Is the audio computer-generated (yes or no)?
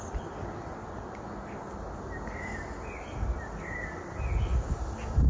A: no